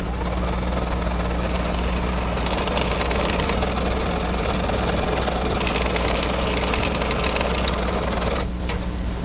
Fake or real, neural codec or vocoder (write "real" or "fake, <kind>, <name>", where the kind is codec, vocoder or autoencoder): real